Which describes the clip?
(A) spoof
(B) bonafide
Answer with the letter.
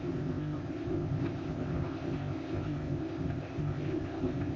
A